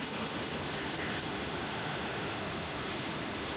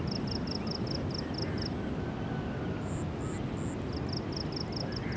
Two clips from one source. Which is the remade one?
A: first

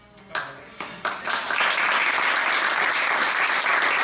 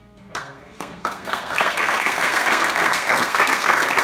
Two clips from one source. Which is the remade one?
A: second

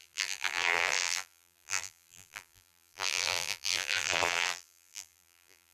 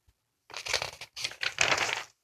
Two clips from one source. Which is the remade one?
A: first